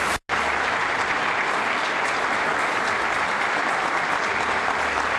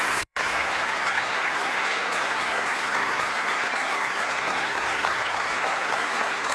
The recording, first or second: first